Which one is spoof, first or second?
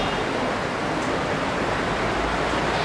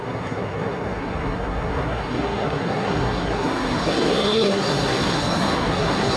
second